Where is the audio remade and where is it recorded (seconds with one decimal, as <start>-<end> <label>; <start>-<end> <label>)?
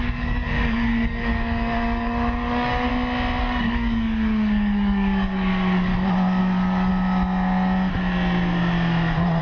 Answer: 0.0-2.9 remade; 2.9-3.4 recorded; 3.4-5.9 remade; 5.9-6.4 recorded; 6.4-6.9 remade; 6.9-9.4 recorded